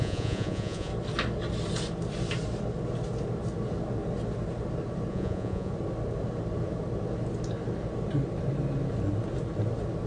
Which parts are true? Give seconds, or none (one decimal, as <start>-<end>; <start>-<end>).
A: 0.9-5.1; 5.7-10.1